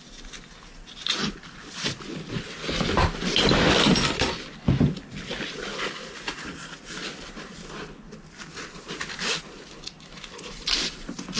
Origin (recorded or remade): recorded